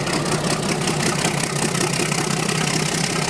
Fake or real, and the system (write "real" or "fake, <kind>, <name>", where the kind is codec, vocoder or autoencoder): real